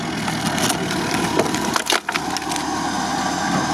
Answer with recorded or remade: recorded